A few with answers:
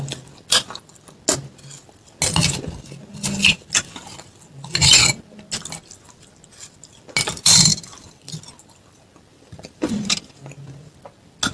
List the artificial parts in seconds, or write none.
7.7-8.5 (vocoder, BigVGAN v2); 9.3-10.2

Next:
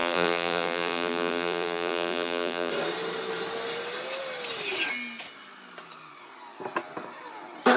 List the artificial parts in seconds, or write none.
0.0-2.7 (vocoder, BigVGAN v2)

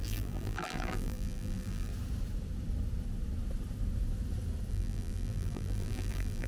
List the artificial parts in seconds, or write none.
0.0-1.9 (vocoder, BigVGAN v2); 4.7-6.5

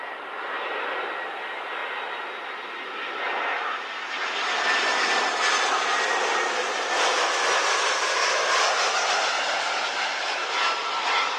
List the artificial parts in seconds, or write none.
0.0-1.8 (vocoder, BigVGAN v2); 6.9-8.2; 8.9-11.4

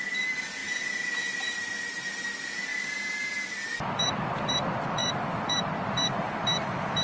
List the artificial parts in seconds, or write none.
0.0-2.7 (vocoder, BigVGAN v2); 3.5-7.0

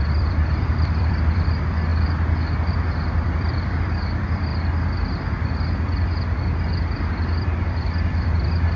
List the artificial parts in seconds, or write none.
0.0-1.9 (vocoder, BigVGAN v2); 2.7-4.5; 6.7-8.8